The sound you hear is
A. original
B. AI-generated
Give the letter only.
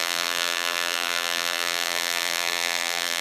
B